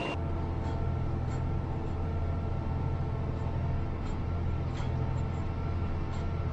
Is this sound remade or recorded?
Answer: recorded